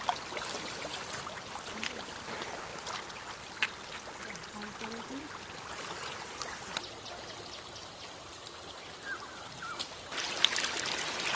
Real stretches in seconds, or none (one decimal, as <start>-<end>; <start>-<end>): 0.0-11.4